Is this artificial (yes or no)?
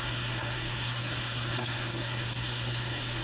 yes